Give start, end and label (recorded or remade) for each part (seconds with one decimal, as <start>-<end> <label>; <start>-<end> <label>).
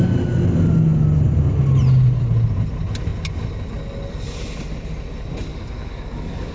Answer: 0.0-5.5 recorded; 5.5-6.5 remade